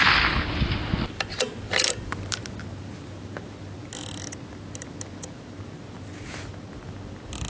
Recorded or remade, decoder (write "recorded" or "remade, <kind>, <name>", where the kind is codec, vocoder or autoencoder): recorded